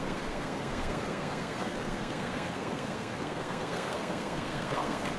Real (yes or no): no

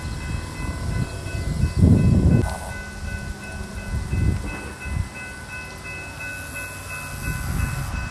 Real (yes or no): yes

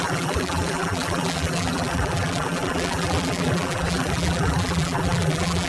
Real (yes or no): no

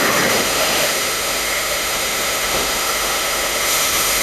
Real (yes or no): no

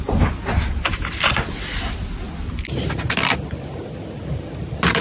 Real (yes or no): yes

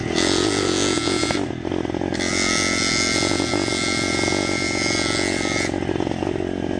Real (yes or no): yes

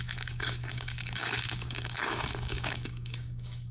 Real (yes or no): no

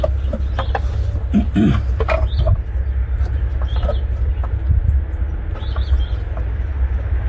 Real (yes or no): yes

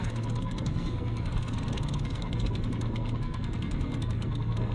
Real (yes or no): no